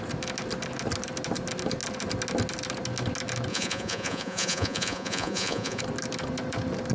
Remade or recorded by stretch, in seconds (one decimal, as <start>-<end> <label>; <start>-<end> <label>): 0.0-3.5 recorded; 3.5-5.8 remade; 5.8-6.9 recorded